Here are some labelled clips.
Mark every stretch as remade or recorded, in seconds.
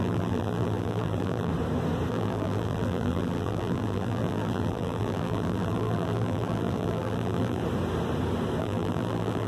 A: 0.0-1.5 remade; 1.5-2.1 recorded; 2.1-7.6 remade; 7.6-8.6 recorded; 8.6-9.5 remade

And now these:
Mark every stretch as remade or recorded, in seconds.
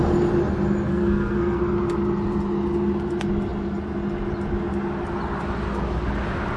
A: 0.0-0.9 recorded; 0.9-1.6 remade; 1.6-6.6 recorded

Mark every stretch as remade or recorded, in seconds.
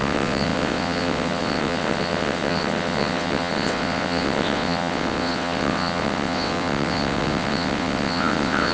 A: 0.0-8.7 remade